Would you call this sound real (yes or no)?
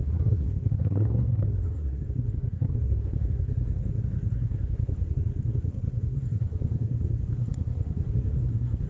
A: no